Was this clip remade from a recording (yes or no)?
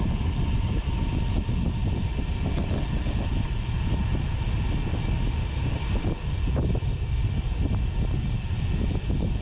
no